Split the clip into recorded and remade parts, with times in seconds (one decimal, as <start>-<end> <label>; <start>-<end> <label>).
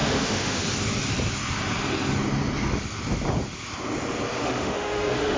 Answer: 0.0-0.6 remade; 0.6-4.4 recorded; 4.4-5.4 remade